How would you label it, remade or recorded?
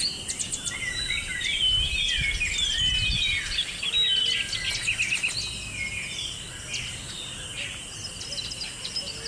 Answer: recorded